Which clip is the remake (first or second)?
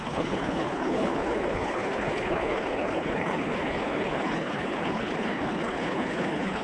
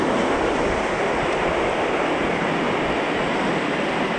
first